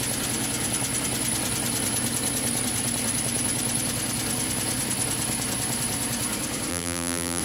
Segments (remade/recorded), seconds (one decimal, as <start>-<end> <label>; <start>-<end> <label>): 0.0-6.7 recorded; 6.7-7.4 remade